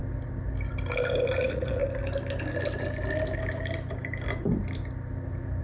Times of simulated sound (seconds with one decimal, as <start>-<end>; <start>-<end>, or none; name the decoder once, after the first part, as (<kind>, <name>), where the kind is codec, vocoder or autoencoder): 1.4-1.8 (vocoder, Vocos)